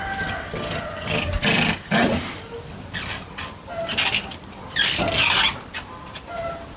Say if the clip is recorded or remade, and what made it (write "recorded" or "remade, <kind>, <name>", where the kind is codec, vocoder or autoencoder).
recorded